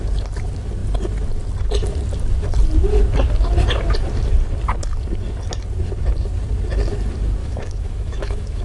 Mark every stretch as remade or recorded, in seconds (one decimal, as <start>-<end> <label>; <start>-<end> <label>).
0.0-7.4 recorded; 7.4-8.6 remade